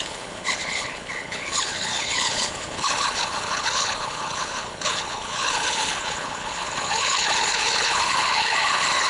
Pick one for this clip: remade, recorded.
remade